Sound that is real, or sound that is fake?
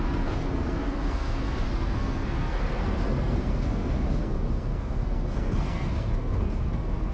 fake